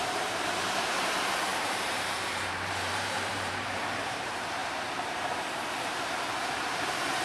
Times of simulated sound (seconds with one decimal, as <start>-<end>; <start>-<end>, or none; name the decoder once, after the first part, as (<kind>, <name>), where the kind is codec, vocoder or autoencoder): 0.0-7.2 (vocoder, BigVGAN v2)